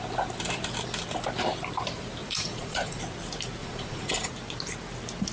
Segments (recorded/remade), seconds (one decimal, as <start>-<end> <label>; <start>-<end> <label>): 0.0-2.2 recorded; 2.2-3.0 remade; 3.0-3.6 recorded; 3.6-4.1 remade; 4.1-5.3 recorded